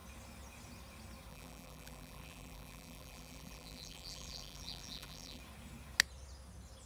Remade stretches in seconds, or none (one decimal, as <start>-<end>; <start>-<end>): 1.3-5.4